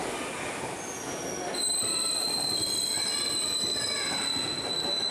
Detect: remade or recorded recorded